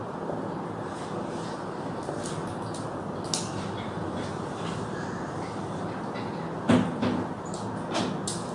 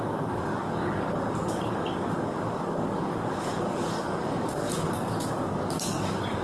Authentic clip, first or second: first